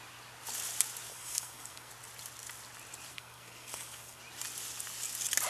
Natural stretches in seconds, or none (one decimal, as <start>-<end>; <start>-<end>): 0.0-1.1; 1.9-3.1; 4.2-5.5